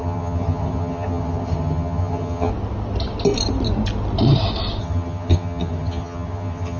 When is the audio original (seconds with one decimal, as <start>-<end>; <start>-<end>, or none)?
2.5-4.8